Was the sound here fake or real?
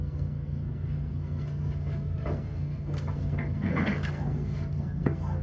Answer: fake